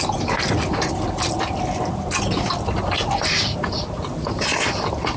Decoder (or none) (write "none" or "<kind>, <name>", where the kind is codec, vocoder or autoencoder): none